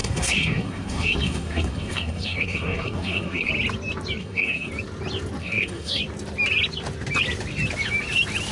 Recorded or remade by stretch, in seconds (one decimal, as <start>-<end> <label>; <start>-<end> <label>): 0.0-3.5 remade; 3.5-4.2 recorded; 4.2-4.7 remade; 4.7-5.4 recorded; 5.4-6.0 remade; 6.0-8.5 recorded